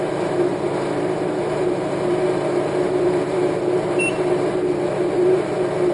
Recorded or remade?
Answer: remade